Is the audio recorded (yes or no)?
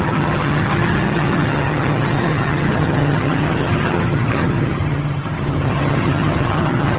no